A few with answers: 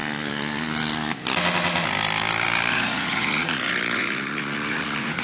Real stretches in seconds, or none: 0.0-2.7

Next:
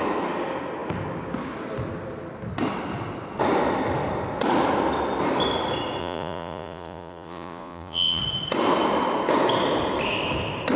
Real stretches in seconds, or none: 0.0-6.0; 8.2-10.8